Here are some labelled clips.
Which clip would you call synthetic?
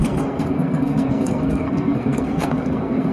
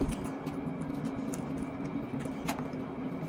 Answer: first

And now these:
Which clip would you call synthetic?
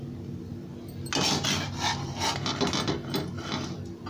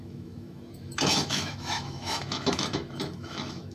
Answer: second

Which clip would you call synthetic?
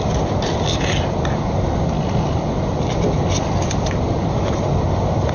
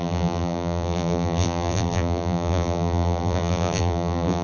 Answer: second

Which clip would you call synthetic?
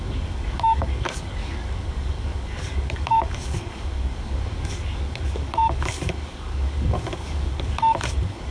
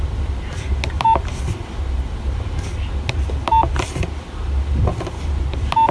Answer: first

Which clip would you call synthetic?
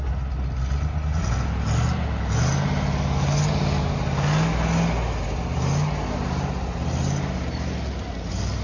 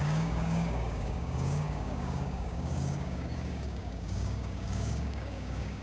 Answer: second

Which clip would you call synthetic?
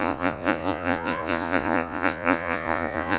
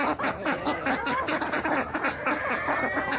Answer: first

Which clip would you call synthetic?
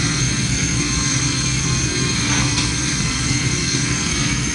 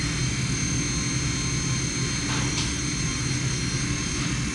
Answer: first